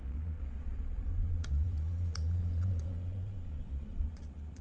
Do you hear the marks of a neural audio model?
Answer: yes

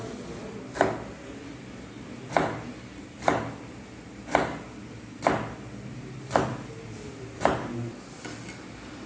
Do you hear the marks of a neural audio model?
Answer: no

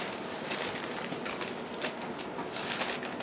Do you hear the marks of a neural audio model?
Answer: no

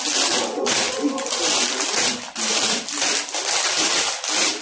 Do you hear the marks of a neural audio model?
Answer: no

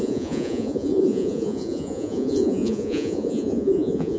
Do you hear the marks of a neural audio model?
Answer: yes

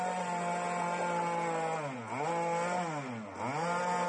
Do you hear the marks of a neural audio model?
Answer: no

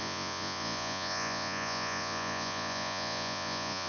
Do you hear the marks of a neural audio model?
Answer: yes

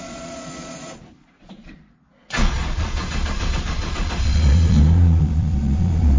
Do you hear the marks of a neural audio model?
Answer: yes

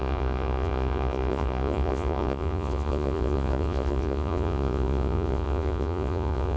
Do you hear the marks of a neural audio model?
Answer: yes